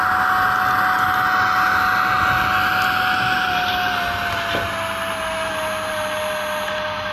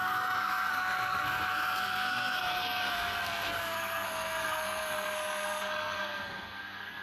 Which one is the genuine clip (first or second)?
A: first